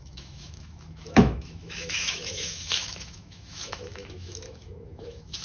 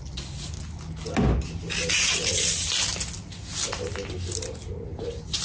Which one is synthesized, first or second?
first